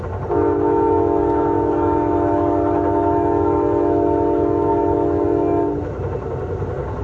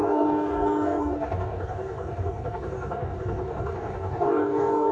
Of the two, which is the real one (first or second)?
first